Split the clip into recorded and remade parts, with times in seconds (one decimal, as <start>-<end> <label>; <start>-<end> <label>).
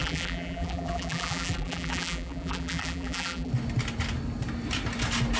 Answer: 0.0-3.5 remade; 3.5-5.4 recorded